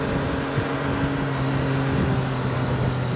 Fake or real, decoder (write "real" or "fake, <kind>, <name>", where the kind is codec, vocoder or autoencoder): real